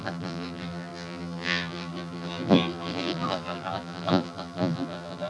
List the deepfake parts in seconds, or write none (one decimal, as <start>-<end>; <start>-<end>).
0.0-5.3